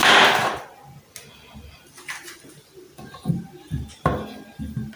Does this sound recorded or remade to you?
recorded